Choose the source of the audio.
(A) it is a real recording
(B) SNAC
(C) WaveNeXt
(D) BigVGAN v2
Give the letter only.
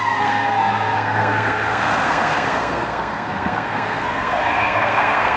B